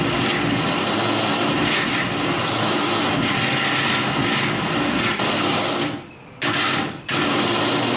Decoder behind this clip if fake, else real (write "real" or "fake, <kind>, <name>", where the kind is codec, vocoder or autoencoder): real